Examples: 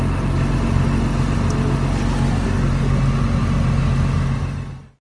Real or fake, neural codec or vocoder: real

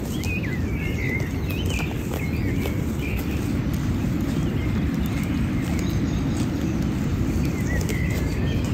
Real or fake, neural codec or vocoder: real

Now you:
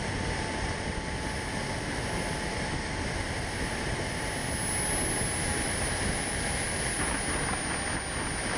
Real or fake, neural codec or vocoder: real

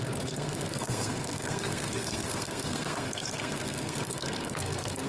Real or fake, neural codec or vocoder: fake, codec, SNAC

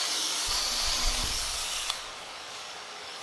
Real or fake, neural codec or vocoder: fake, codec, DAC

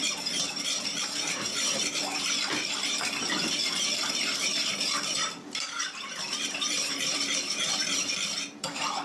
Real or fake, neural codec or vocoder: fake, vocoder, BigVGAN v2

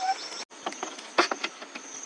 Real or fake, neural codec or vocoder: real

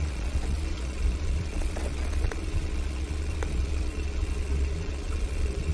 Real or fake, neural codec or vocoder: fake, vocoder, Vocos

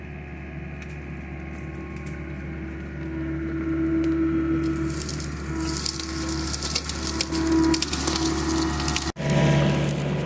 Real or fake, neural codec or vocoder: real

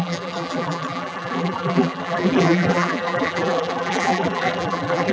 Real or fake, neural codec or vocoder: fake, vocoder, BigVGAN v2